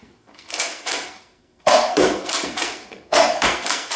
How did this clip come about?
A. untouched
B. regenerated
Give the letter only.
B